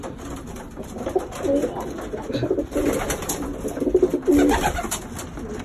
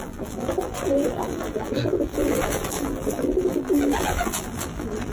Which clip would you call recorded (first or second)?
first